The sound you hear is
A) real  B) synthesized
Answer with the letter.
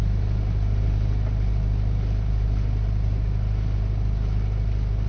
A